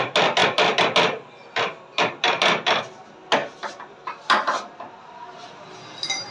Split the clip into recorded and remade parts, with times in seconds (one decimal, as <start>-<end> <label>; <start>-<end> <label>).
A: 0.0-6.3 recorded